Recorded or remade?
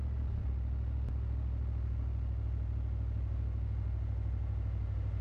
recorded